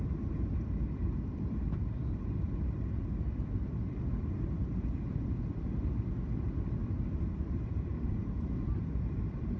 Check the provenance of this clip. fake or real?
fake